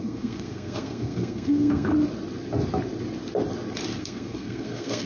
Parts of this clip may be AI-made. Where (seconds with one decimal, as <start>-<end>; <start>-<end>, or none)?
0.0-1.9; 4.0-5.1